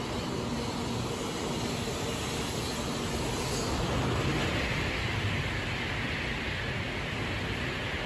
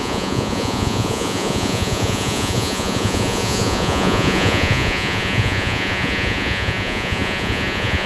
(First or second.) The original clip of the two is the first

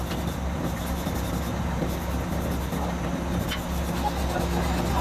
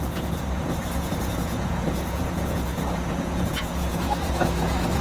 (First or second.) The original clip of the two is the first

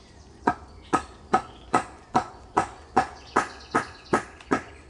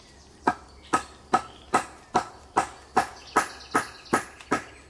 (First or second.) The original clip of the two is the second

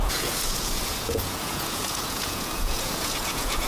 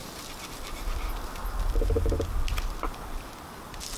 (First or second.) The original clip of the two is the second